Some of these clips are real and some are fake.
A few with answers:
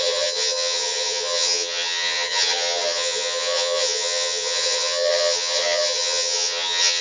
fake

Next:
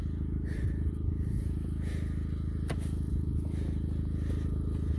real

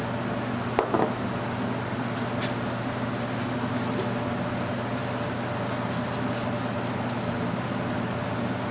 real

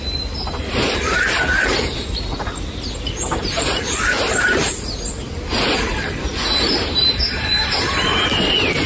real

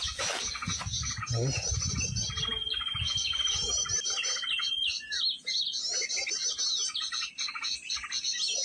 real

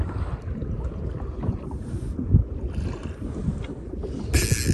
real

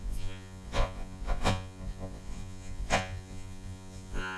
fake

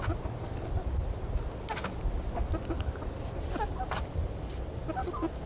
real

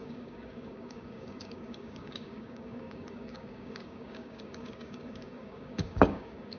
fake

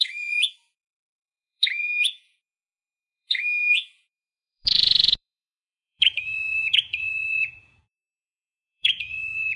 fake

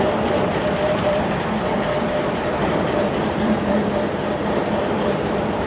fake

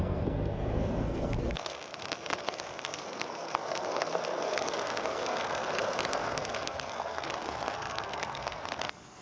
fake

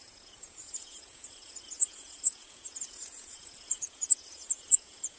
fake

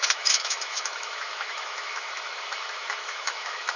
fake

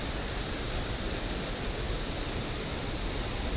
real